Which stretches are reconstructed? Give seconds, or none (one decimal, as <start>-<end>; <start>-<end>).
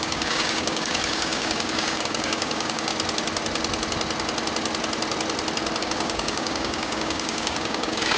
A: 0.0-2.9; 5.8-8.2